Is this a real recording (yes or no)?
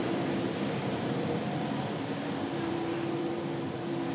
no